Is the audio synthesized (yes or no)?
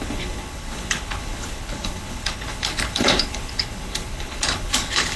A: yes